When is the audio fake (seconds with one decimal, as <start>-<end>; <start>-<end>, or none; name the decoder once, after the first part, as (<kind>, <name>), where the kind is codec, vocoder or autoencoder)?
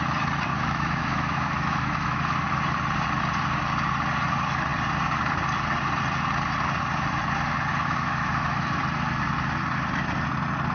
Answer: 0.5-2.2 (autoencoder, DAC-VAE); 7.7-8.8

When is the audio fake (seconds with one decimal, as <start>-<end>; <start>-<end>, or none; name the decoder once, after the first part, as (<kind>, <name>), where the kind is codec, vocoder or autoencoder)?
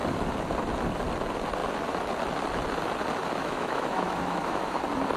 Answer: 3.4-4.8 (autoencoder, DAC-VAE)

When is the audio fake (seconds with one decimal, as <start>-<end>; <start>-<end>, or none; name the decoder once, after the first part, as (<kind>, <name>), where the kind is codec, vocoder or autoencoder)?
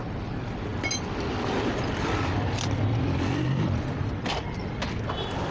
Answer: none